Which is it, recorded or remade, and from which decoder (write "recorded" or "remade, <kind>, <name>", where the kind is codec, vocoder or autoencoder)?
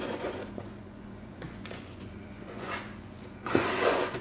remade, vocoder, Vocos